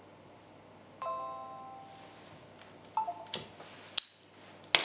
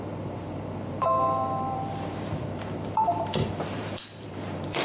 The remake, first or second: second